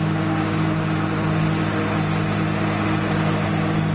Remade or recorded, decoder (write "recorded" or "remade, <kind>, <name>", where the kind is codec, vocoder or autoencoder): recorded